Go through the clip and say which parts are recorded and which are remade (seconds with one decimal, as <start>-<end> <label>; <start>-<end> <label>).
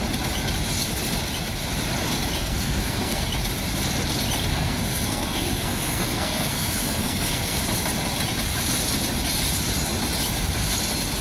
0.0-2.4 recorded; 2.4-3.3 remade; 3.3-4.5 recorded; 4.5-7.6 remade; 7.6-11.2 recorded